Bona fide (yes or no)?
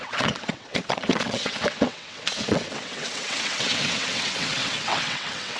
no